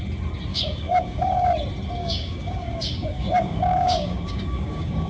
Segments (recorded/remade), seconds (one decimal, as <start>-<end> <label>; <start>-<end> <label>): 0.0-0.5 recorded; 0.5-1.5 remade; 1.5-2.0 recorded; 2.0-5.1 remade